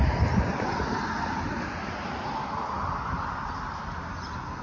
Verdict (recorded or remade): recorded